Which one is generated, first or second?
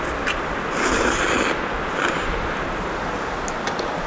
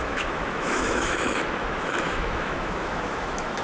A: second